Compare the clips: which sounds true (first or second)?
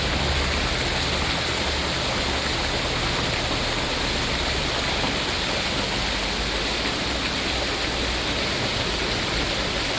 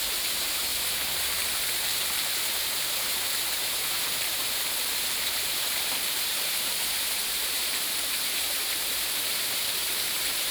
first